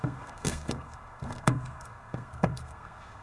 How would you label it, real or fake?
fake